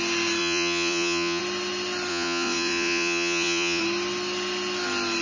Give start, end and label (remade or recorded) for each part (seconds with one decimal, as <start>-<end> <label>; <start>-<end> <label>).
0.0-0.4 recorded; 0.4-1.4 remade; 1.4-2.1 recorded; 2.1-3.8 remade; 3.8-5.2 recorded